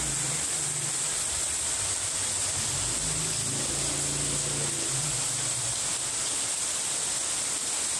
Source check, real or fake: real